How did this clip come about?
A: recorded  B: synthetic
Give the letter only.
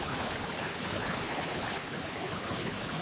B